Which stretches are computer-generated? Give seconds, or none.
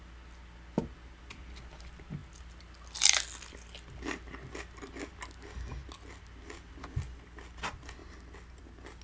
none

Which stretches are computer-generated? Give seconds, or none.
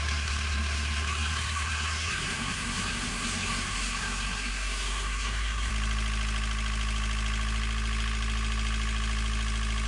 0.0-5.7 (codec, SNAC)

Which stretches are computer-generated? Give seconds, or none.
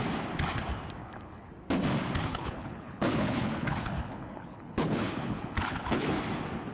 1.0-1.5 (codec, HILCodec); 2.2-6.2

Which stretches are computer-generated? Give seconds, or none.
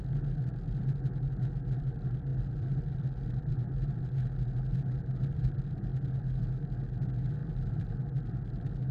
2.3-3.5 (vocoder, BigVGAN v2); 7.4-7.9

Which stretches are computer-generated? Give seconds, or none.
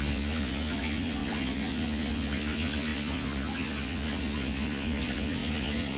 0.0-6.0 (vocoder, Vocos)